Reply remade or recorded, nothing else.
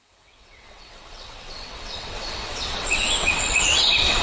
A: remade